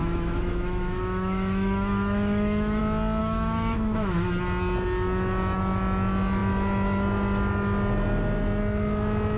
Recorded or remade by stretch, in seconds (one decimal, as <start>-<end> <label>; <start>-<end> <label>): 0.0-2.8 remade; 2.8-3.2 recorded; 3.2-4.3 remade; 4.3-9.4 recorded